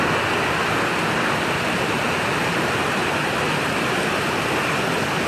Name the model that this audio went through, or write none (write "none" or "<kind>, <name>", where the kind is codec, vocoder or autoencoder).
none